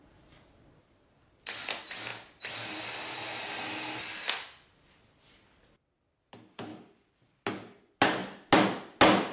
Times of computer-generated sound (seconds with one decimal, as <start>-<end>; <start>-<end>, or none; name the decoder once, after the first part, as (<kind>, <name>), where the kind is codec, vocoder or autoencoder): none